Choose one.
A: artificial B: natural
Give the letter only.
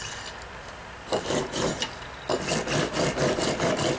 B